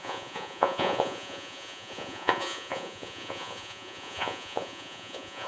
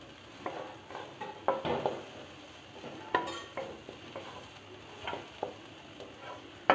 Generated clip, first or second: first